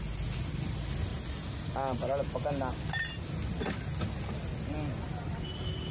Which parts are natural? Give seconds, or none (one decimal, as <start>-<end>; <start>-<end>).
0.0-5.9